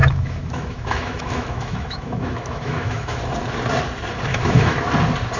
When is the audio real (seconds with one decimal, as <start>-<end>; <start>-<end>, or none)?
3.2-4.3; 4.9-5.4